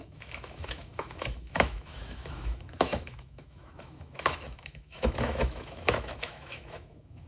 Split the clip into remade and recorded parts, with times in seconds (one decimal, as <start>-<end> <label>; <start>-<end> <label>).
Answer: 0.0-7.3 remade

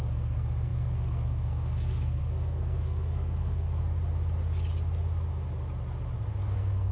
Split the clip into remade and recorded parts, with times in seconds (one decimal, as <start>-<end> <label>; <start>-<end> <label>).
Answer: 0.0-3.8 remade; 3.8-6.4 recorded; 6.4-6.9 remade